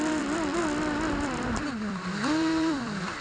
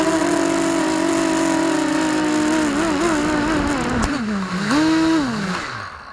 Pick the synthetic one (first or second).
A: first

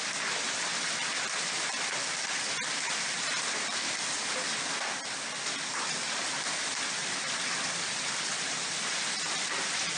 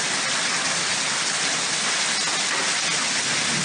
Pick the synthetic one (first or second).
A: first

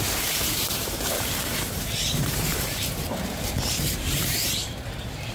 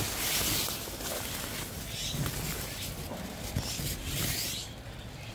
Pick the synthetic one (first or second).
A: first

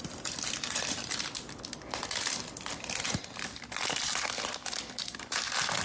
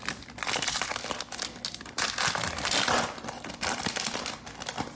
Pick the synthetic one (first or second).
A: first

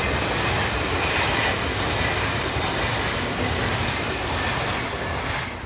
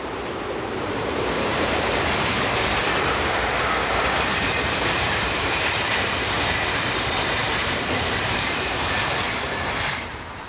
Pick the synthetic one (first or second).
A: second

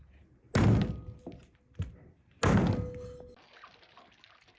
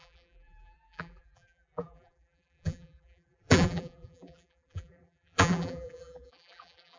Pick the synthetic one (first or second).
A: second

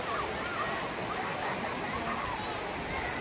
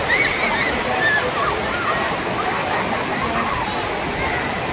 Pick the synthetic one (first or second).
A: second